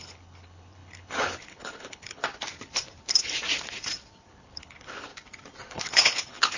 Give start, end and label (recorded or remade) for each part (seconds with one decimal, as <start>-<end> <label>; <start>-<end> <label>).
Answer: 0.0-2.2 remade; 2.2-4.3 recorded; 4.3-5.1 remade; 5.1-5.7 recorded; 5.7-6.6 remade